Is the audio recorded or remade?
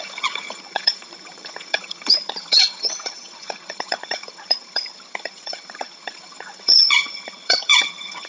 remade